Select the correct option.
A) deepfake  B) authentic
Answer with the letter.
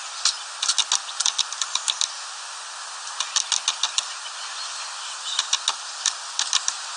B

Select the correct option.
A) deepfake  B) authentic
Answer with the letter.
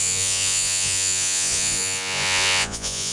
A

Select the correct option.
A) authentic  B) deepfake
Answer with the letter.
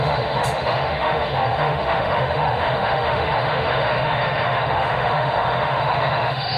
B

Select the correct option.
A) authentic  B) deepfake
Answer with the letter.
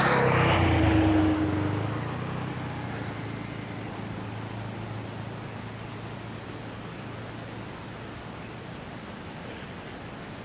A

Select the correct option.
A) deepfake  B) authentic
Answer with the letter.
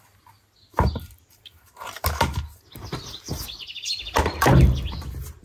B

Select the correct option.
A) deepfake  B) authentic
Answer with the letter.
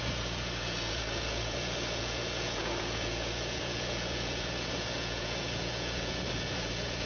A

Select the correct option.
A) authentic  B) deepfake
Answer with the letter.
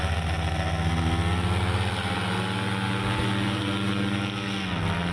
A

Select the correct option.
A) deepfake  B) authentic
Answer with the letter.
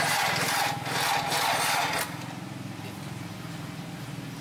B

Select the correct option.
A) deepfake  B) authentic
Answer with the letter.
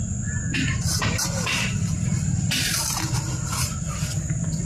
B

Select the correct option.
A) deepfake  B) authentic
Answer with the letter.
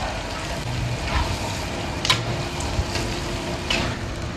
B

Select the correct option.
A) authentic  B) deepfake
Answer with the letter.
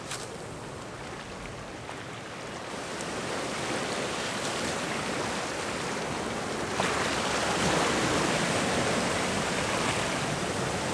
A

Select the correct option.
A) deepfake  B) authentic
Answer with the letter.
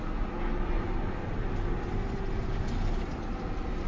B